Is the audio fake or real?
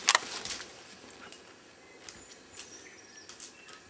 real